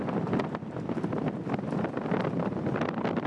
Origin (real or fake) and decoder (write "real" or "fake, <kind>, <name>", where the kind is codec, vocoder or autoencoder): real